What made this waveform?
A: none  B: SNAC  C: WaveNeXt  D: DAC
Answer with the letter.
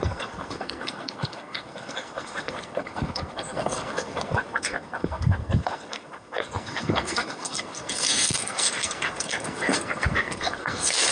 B